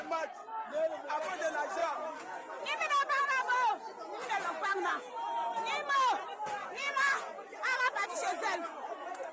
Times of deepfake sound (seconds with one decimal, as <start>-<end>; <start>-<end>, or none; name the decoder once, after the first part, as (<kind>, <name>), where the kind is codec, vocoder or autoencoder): 1.8-2.5 (vocoder, Vocos); 3.7-5.1; 6.6-9.3